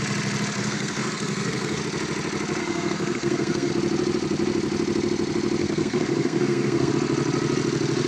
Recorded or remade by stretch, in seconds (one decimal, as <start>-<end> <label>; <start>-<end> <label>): 0.0-0.6 recorded; 0.6-1.8 remade; 1.8-2.6 recorded; 2.6-3.7 remade; 3.7-5.6 recorded; 5.6-6.9 remade; 6.9-8.1 recorded